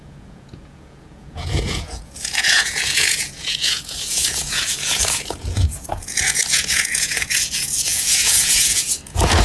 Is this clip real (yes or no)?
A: no